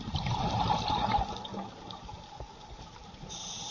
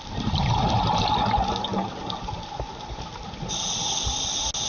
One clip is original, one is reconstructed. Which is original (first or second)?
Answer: second